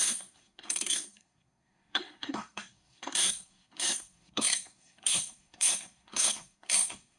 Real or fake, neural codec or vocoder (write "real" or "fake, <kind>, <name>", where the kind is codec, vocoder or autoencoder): fake, codec, SNAC